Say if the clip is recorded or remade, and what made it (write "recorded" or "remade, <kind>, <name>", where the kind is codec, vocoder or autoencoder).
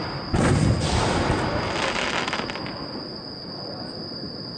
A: recorded